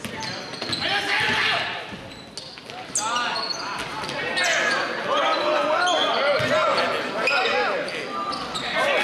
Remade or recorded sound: recorded